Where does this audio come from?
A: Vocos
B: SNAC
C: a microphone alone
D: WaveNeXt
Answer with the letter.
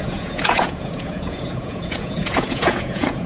A